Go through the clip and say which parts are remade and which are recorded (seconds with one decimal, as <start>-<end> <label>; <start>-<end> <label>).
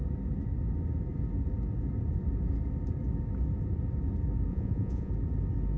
0.0-4.5 recorded; 4.5-5.1 remade; 5.1-5.8 recorded